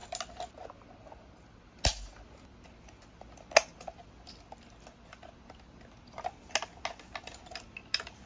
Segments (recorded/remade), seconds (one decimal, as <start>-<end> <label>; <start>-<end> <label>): 0.0-8.3 recorded